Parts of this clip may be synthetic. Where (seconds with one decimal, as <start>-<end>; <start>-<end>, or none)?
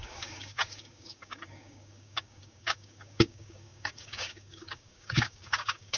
0.0-6.0